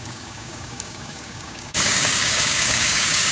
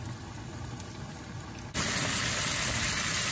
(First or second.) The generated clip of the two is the first